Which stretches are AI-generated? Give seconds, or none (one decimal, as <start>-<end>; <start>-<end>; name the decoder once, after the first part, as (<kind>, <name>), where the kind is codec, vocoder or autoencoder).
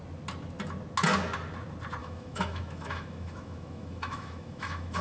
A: 2.0-5.0 (autoencoder, DAC-VAE)